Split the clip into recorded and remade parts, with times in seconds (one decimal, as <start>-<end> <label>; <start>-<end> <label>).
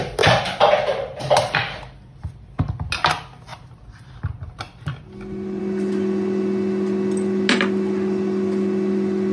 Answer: 0.0-0.9 recorded; 0.9-2.0 remade; 2.0-9.3 recorded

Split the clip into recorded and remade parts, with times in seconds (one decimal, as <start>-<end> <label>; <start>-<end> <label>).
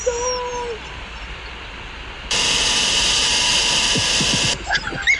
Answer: 0.0-5.2 recorded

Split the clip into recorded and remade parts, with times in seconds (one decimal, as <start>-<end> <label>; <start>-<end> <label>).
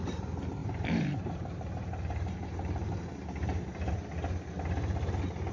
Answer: 0.0-0.6 recorded; 0.6-3.9 remade; 3.9-5.5 recorded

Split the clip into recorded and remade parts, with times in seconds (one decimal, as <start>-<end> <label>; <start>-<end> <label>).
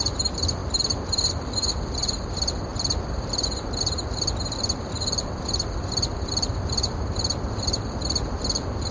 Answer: 0.0-2.7 remade; 2.7-3.8 recorded; 3.8-8.9 remade